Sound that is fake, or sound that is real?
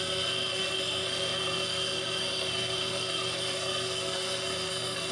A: fake